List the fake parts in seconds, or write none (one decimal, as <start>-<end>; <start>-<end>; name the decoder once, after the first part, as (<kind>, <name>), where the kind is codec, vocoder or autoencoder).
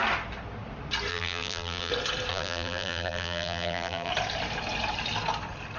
1.1-1.9 (vocoder, BigVGAN v2); 2.3-4.1